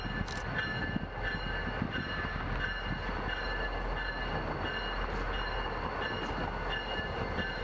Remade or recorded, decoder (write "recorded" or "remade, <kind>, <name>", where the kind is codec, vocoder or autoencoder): recorded